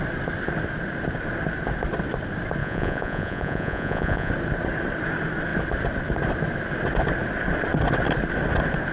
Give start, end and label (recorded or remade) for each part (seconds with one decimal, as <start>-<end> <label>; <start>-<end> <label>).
0.0-2.6 recorded; 2.6-4.3 remade; 4.3-8.9 recorded